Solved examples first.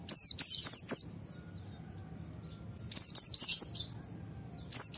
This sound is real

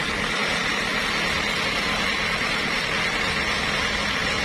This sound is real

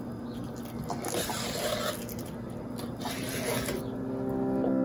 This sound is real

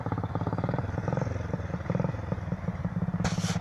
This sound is real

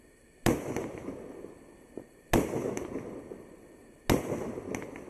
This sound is real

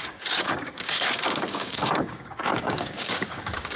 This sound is fake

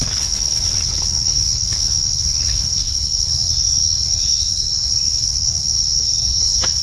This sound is fake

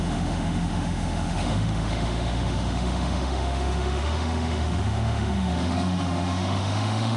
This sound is fake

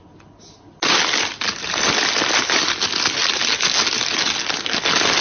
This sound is real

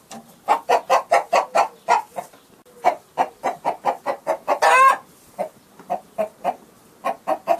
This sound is real